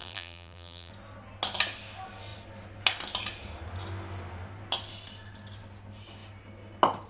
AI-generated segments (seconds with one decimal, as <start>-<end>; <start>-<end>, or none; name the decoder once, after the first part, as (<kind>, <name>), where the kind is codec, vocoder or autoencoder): 0.0-0.9 (vocoder, BigVGAN v2)

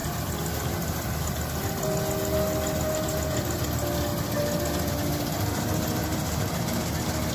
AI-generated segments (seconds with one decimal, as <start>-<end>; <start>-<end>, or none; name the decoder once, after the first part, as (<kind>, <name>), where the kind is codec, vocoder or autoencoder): 0.0-1.1 (vocoder, BigVGAN v2)

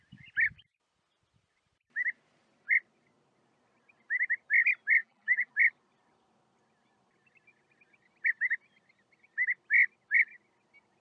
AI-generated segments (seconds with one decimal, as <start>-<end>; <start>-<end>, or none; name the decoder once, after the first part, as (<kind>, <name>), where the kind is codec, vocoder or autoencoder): 5.0-5.5 (vocoder, BigVGAN v2)

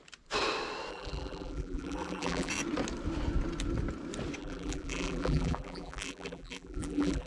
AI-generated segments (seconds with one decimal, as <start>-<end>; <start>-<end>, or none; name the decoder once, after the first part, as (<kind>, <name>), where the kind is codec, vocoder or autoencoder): 0.9-2.5 (vocoder, BigVGAN v2); 4.4-7.3

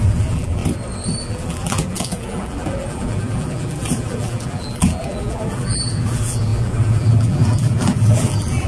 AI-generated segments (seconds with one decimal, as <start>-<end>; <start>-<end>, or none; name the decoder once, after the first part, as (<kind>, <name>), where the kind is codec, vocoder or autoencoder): 0.0-0.6 (vocoder, BigVGAN v2); 1.2-8.7

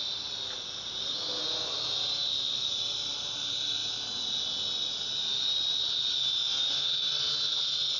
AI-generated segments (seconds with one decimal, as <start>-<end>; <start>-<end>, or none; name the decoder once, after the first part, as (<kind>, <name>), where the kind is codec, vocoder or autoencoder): none